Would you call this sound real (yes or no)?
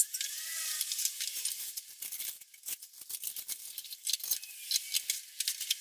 yes